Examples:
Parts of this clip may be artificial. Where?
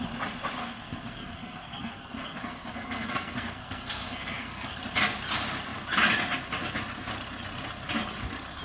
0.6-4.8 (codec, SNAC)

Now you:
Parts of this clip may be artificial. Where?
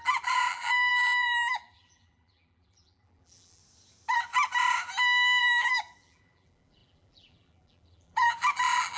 0.0-3.6 (vocoder, BigVGAN v2); 5.4-9.0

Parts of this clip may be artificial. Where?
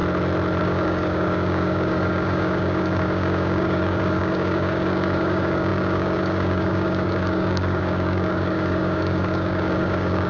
0.6-10.3 (codec, DAC)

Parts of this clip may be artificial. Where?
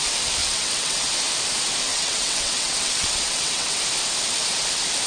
0.4-1.0 (vocoder, WaveNeXt); 1.9-3.8